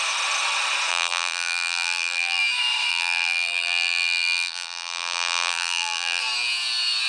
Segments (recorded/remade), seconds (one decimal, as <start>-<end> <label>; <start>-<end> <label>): 0.0-0.9 recorded; 0.9-2.4 remade; 2.4-2.9 recorded; 2.9-6.2 remade; 6.2-7.1 recorded